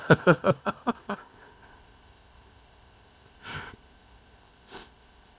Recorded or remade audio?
remade